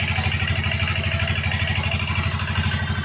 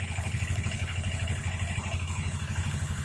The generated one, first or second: second